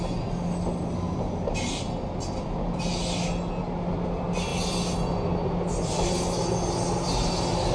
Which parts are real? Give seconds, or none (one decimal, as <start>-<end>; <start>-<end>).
0.0-7.7